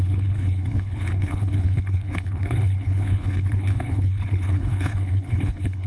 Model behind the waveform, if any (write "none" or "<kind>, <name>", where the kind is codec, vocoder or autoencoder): codec, HILCodec